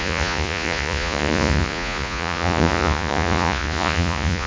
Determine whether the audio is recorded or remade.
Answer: remade